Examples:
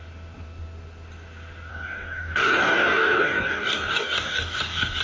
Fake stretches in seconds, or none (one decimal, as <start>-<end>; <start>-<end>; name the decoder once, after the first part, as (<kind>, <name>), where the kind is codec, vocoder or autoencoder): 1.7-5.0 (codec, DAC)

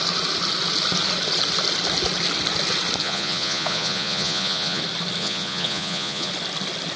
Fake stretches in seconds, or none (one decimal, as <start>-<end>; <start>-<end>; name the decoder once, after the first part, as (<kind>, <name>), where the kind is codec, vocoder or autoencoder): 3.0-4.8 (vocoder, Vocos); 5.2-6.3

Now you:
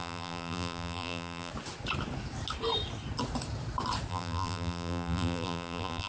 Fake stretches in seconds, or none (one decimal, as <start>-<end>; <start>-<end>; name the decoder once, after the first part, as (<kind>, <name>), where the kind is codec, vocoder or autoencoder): 0.0-1.5 (vocoder, BigVGAN v2); 4.1-6.1

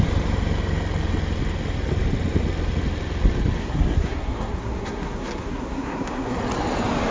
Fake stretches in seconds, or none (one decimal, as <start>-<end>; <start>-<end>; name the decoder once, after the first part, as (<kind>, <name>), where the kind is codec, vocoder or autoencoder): 3.6-6.4 (codec, SNAC)

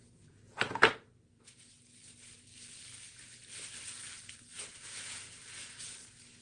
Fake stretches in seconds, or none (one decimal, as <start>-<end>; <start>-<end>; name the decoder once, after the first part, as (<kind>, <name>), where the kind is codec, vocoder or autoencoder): 0.0-1.7 (vocoder, Vocos); 4.5-5.8

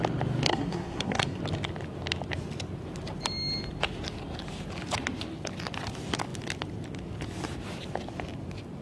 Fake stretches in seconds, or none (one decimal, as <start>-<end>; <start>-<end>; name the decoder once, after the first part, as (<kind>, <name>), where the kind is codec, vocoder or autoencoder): 0.5-1.4 (codec, SNAC)